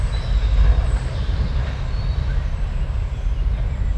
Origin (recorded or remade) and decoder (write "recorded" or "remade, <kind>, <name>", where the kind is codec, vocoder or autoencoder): recorded